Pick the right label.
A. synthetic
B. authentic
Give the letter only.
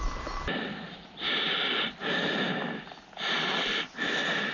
B